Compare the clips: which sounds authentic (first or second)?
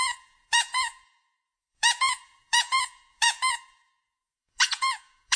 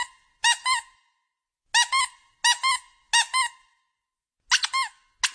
second